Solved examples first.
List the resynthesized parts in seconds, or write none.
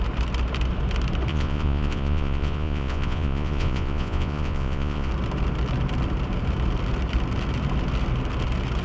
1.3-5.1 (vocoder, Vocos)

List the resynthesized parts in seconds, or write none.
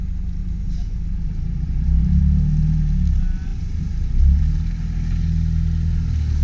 0.4-2.2 (vocoder, BigVGAN v2); 3.5-4.4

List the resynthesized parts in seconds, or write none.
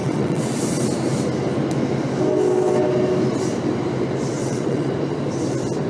0.0-0.6 (vocoder, WaveNeXt); 4.4-4.9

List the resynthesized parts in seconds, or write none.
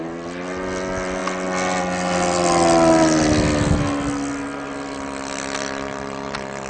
none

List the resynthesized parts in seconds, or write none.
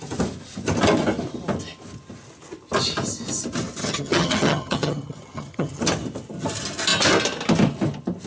3.8-5.8 (vocoder, HiFi-GAN)